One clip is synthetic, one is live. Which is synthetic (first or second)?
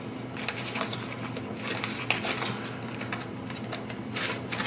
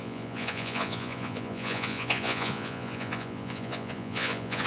second